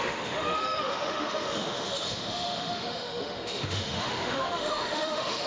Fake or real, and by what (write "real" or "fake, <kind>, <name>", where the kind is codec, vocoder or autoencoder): fake, autoencoder, DAC-VAE